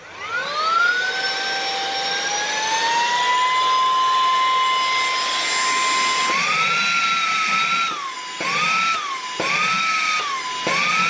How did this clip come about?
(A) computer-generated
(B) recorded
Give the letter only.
B